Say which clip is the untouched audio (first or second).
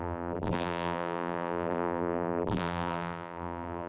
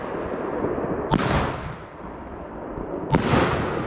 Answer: second